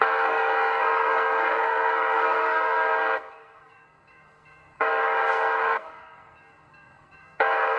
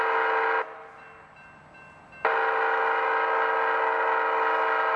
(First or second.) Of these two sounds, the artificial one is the first